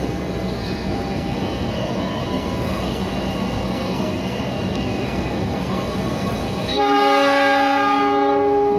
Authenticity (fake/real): fake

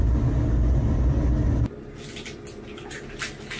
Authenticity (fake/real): real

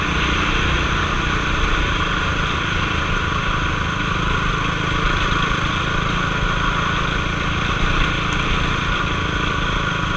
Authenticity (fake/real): real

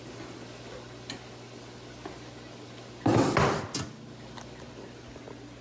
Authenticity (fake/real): real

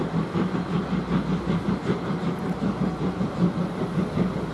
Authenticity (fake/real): real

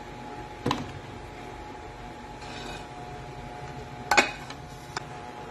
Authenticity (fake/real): real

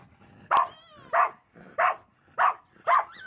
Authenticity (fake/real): real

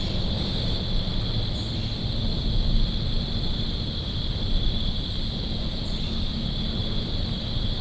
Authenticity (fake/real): real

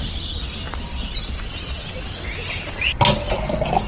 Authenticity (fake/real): real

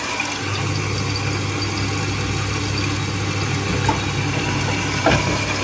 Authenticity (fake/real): real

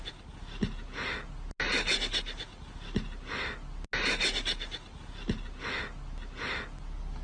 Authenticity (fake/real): real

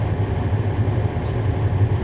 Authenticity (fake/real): real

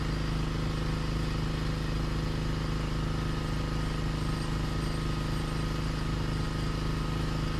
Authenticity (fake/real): real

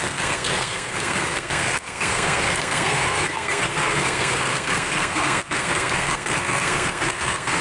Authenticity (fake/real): fake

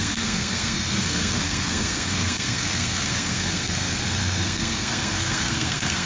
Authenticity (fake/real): fake